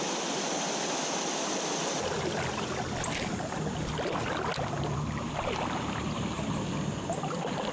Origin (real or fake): real